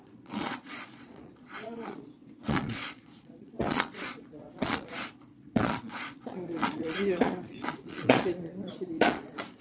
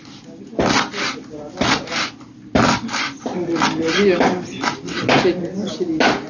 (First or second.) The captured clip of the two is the second